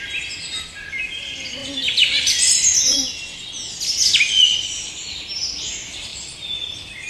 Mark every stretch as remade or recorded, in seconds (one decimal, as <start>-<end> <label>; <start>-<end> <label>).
0.0-7.1 recorded